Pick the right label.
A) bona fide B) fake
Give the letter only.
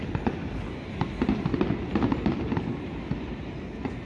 A